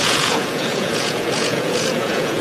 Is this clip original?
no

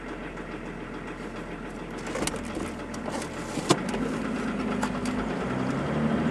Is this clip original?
yes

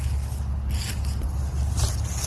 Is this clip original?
yes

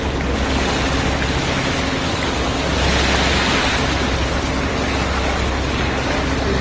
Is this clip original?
yes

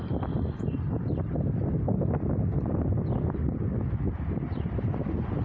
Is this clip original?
yes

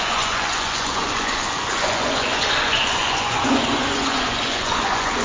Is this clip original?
no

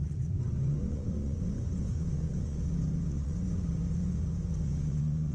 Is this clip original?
no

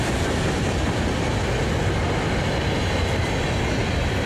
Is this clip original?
yes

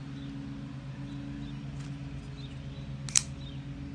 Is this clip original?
yes